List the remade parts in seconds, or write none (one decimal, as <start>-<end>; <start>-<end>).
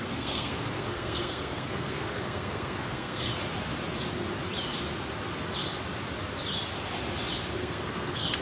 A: 0.0-3.3; 7.5-8.4